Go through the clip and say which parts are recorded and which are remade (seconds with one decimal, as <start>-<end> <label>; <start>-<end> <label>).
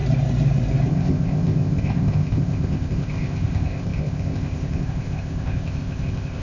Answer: 0.0-0.9 recorded; 0.9-6.4 remade